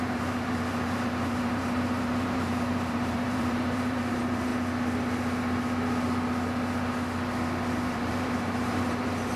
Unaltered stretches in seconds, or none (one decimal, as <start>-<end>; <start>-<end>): 4.5-7.8